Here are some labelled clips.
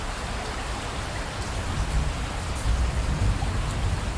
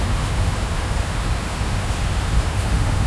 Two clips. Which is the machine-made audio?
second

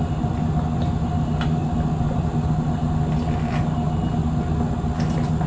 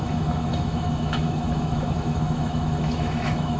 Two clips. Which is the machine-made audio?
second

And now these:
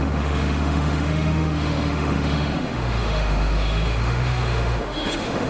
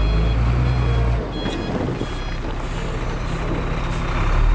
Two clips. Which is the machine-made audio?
first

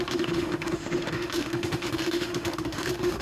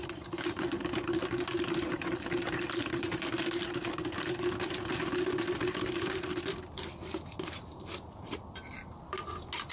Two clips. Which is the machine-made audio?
first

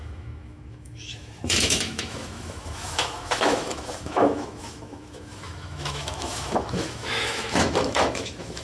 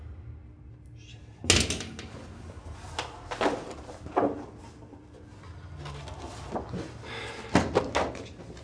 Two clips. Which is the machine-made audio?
first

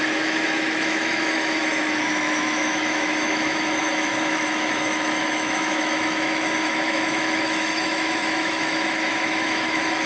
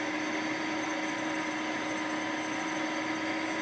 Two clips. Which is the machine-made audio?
first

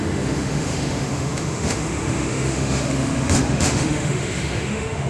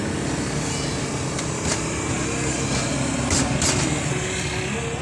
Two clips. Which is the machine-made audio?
first